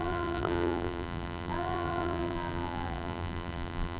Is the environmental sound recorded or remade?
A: remade